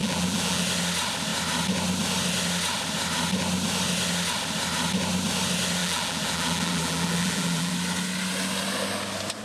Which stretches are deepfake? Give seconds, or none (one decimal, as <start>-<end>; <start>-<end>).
0.0-0.6; 5.8-7.7